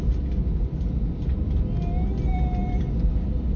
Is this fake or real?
real